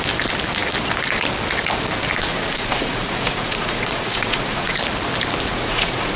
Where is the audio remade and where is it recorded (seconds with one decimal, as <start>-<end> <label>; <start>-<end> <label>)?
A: 0.0-2.3 recorded; 2.3-4.8 remade; 4.8-5.5 recorded; 5.5-6.2 remade